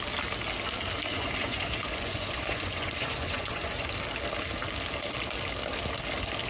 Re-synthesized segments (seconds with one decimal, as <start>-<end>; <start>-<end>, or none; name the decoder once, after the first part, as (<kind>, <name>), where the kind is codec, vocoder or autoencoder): 1.1-3.9 (vocoder, Vocos)